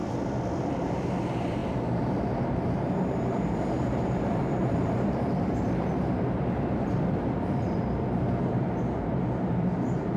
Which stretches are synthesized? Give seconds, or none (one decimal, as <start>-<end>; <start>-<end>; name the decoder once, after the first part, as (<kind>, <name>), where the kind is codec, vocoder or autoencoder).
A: 0.7-10.2 (vocoder, BigVGAN v2)